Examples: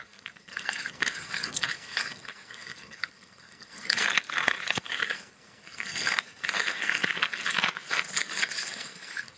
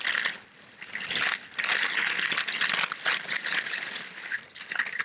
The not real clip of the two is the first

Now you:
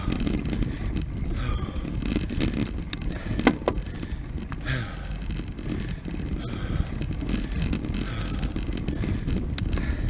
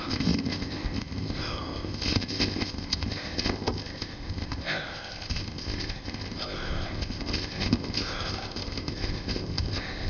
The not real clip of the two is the second